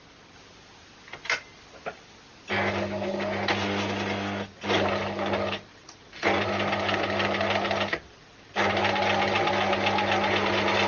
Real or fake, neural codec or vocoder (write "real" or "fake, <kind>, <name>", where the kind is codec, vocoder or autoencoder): real